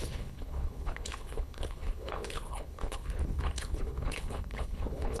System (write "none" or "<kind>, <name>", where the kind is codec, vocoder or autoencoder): codec, HILCodec